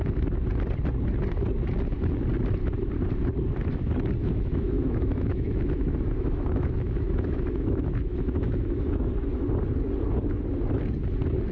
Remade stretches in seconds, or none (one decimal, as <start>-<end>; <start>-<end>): 4.2-9.1